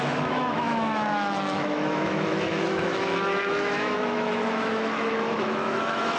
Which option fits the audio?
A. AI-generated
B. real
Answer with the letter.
A